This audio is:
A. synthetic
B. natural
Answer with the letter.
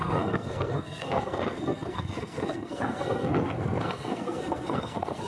A